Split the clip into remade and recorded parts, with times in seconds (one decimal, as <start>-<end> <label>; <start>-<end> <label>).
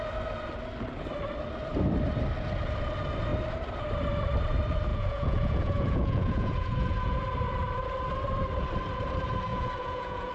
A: 0.0-4.9 recorded; 4.9-7.2 remade; 7.2-9.5 recorded; 9.5-10.3 remade